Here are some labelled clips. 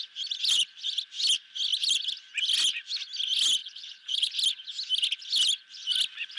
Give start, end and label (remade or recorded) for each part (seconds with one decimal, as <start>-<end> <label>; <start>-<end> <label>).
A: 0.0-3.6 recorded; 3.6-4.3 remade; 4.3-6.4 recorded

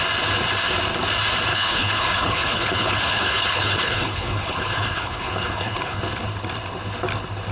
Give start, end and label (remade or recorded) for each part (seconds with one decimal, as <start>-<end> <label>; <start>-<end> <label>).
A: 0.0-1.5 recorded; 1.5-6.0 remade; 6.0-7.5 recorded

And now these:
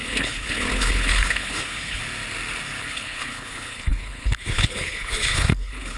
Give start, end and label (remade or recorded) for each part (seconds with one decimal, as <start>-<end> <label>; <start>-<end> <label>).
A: 0.0-2.0 remade; 2.0-2.8 recorded; 2.8-6.0 remade

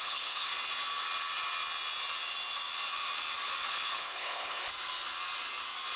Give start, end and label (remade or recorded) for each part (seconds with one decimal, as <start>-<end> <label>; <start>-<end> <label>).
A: 0.0-0.5 remade; 0.5-3.7 recorded; 3.7-4.6 remade; 4.6-6.0 recorded

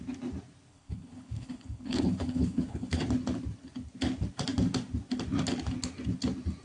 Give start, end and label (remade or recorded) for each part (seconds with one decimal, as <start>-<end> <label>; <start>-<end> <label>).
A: 0.0-0.7 recorded; 0.7-3.0 remade; 3.0-6.6 recorded

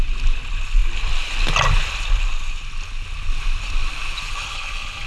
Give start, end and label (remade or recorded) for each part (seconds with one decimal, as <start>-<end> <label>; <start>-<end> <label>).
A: 0.0-4.3 recorded; 4.3-5.1 remade

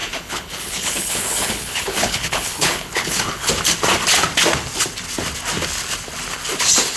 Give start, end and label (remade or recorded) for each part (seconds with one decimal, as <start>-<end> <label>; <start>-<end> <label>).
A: 0.0-3.5 remade; 3.5-7.0 recorded